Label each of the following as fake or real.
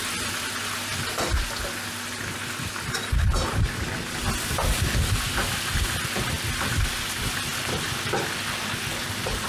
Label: real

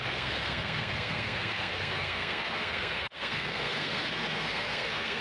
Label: fake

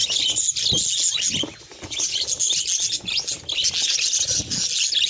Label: real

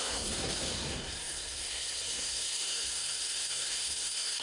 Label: fake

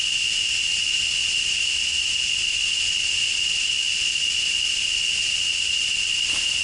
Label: real